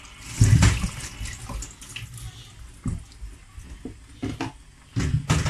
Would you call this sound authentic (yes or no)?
yes